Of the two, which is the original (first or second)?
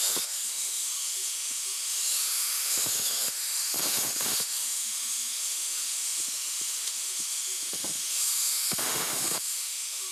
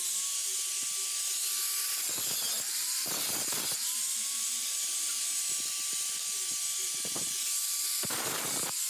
second